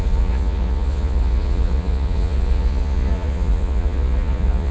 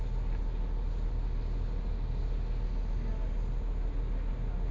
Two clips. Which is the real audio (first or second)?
second